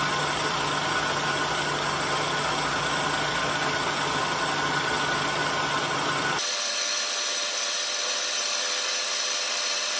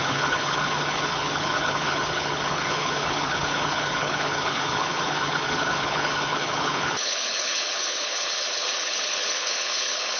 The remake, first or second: second